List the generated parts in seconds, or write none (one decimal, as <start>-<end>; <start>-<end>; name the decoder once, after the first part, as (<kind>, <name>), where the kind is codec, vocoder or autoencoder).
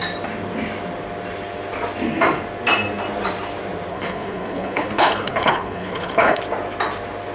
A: 3.9-6.4 (codec, HILCodec)